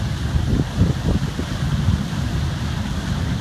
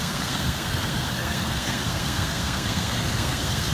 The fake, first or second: second